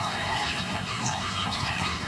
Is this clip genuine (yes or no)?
no